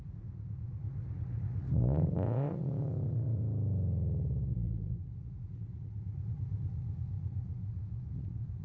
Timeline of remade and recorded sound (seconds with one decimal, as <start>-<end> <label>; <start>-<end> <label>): 0.0-3.4 remade; 3.4-4.5 recorded; 4.5-8.6 remade